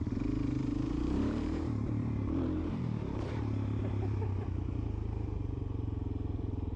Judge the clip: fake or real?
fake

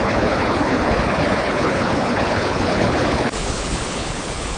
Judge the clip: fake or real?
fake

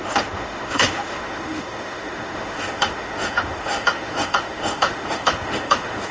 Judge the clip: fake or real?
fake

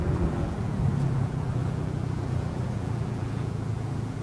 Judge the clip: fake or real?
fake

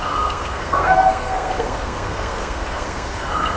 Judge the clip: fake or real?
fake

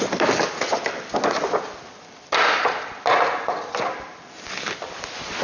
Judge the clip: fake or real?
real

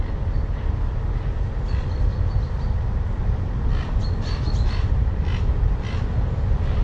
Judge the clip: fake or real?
real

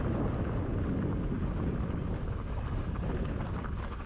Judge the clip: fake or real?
real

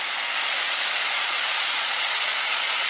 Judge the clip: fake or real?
fake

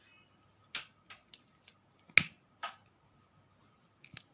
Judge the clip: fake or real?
real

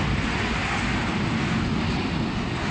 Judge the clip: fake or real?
real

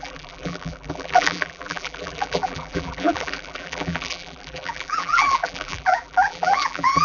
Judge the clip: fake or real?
fake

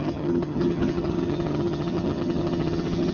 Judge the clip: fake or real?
fake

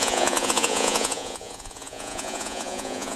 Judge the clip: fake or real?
fake